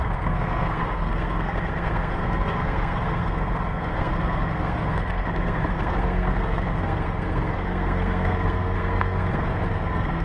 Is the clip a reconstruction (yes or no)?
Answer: yes